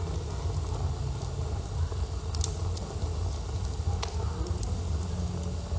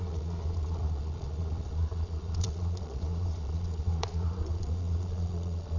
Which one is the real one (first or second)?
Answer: first